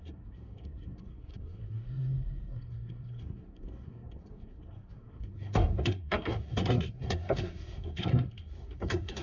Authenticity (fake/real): fake